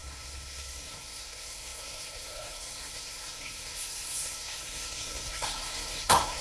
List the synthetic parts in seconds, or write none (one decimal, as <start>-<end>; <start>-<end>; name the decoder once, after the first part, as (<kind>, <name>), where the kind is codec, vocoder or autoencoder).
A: 0.0-6.4 (codec, SNAC)